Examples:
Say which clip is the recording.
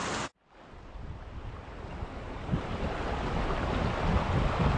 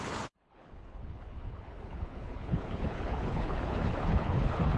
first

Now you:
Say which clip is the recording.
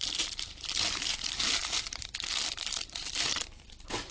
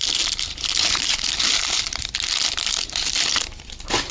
second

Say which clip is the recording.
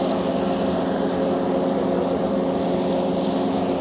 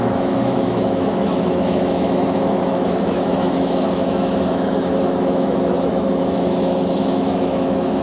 first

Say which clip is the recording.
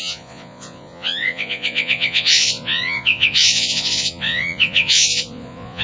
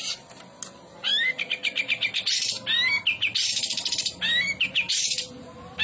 second